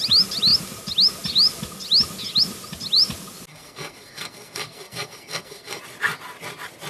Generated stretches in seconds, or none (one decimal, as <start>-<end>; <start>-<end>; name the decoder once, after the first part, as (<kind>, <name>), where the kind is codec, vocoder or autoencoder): 3.5-5.8 (codec, SNAC)